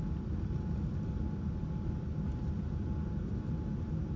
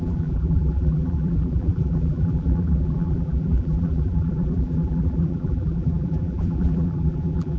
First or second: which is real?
first